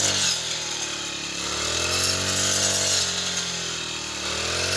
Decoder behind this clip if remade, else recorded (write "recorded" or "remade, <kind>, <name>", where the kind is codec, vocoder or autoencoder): recorded